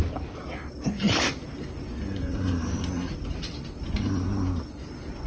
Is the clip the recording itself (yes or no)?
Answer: yes